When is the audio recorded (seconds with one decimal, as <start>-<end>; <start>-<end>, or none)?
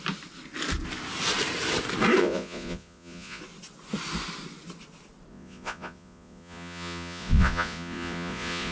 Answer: 0.0-2.2; 3.4-5.3